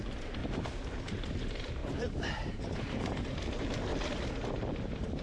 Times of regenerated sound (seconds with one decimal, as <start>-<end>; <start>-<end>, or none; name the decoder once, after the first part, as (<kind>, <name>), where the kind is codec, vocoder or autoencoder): 0.0-0.4 (vocoder, BigVGAN v2); 1.1-3.9; 4.8-5.2